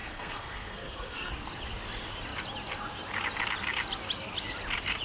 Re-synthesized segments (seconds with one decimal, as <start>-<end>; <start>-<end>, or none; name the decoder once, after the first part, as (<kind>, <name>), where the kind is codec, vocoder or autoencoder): 0.0-1.3 (codec, SNAC)